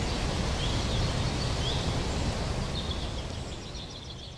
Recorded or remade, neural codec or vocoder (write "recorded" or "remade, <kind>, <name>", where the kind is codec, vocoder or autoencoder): recorded